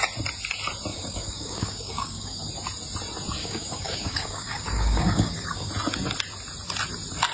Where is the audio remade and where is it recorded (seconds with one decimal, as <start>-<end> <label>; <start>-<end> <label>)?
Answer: 0.0-0.9 recorded; 0.9-2.5 remade; 2.5-3.4 recorded; 3.4-5.7 remade; 5.7-7.3 recorded